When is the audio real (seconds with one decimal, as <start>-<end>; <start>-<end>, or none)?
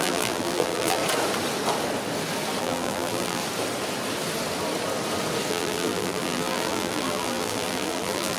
1.0-2.6; 3.4-5.5